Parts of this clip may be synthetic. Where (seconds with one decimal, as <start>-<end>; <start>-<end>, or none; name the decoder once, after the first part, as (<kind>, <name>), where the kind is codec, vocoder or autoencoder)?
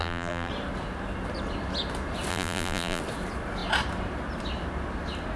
0.0-0.5 (vocoder, BigVGAN v2); 2.3-3.0